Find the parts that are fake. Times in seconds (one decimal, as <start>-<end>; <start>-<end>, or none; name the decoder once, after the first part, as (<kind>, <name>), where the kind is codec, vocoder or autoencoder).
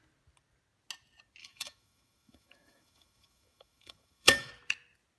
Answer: 1.4-4.5 (autoencoder, DAC-VAE)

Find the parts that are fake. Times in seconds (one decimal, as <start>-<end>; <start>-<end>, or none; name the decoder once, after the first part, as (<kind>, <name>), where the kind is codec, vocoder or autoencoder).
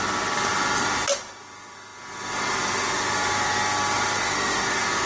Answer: none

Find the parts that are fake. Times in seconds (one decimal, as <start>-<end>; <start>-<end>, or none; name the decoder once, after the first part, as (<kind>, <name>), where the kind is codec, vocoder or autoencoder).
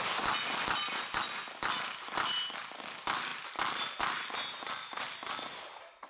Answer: none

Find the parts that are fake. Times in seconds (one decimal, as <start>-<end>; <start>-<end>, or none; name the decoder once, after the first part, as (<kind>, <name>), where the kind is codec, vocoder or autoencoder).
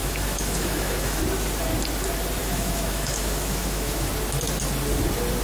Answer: 0.0-1.2 (autoencoder, DAC-VAE); 2.4-4.1